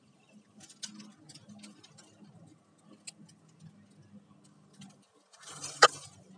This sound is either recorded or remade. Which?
recorded